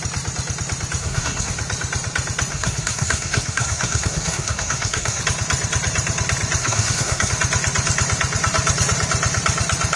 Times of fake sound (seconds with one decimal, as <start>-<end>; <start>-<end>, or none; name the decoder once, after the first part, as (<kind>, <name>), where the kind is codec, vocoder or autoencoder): 1.0-1.5 (codec, SNAC); 2.5-5.2; 6.6-7.3

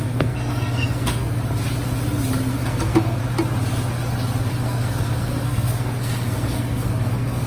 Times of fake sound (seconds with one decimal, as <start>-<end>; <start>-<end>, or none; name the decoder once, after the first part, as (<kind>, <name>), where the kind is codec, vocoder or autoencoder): 0.0-1.4 (codec, SNAC); 2.5-3.2; 4.5-7.5

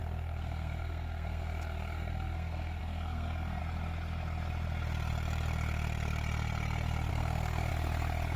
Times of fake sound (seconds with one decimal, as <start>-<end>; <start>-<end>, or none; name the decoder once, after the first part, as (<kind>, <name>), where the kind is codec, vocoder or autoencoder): 0.0-3.6 (codec, SNAC); 7.1-7.7

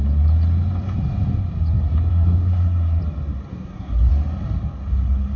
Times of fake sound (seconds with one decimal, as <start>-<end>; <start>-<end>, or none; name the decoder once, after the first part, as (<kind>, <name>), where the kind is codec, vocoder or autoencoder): 2.1-3.0 (codec, SNAC); 3.5-4.1

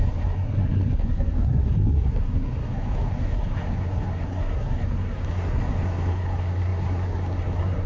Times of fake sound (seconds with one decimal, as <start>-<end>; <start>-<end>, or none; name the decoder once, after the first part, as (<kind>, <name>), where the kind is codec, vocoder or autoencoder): 0.0-7.9 (codec, SNAC)

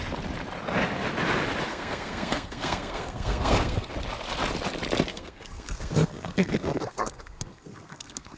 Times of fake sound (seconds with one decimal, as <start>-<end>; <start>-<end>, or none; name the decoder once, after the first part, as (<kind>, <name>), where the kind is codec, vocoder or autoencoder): 1.7-3.9 (codec, SNAC); 5.1-8.4

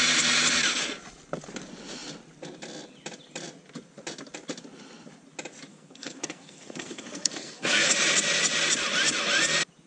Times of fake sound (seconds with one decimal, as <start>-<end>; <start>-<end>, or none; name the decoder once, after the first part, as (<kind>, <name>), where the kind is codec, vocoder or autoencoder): 5.7-7.9 (codec, SNAC)